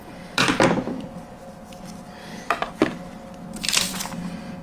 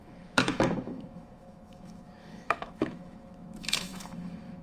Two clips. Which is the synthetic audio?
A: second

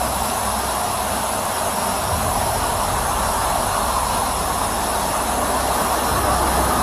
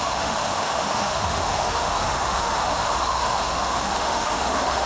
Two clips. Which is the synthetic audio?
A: second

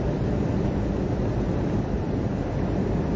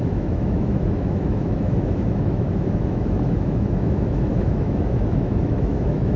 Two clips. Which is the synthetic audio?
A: second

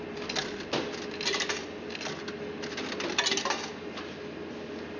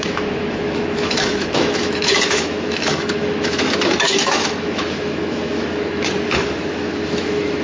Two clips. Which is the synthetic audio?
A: second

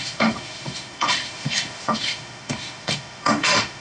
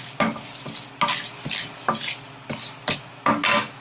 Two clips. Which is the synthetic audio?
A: first